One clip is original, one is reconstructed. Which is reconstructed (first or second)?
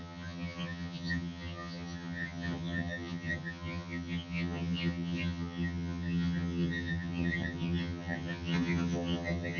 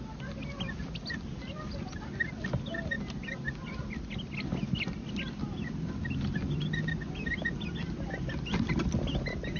first